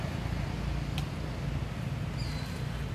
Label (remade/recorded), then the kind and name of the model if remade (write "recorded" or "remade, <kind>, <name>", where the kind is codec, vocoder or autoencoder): recorded